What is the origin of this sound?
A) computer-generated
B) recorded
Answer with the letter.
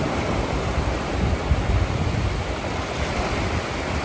B